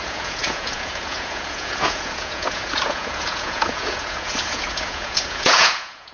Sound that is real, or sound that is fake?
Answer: fake